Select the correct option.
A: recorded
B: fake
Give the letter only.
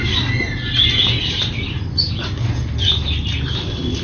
A